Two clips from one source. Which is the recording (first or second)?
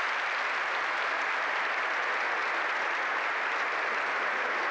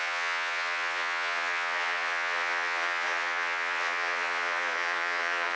first